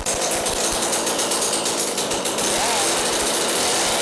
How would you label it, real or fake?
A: real